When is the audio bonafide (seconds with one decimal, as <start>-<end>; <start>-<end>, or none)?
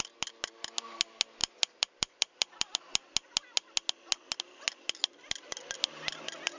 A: 0.0-1.4; 2.9-6.6